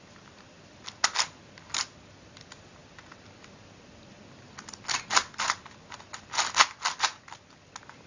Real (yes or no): yes